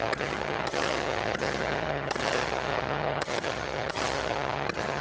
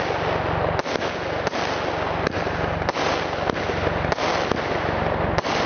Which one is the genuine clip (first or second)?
second